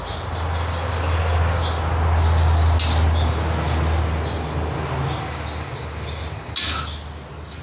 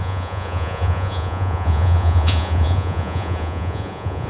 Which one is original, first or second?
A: first